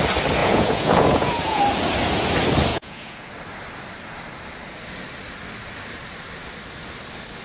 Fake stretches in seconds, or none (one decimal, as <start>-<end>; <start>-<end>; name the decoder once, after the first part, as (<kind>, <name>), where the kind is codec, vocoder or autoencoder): 0.4-1.6 (vocoder, Vocos); 2.7-3.3